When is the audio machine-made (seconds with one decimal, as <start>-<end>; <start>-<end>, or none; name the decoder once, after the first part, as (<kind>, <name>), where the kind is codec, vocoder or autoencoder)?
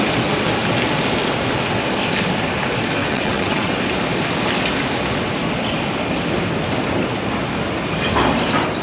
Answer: 3.0-3.7 (vocoder, WaveNeXt)